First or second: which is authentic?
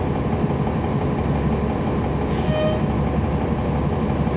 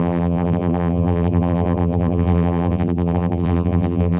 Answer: first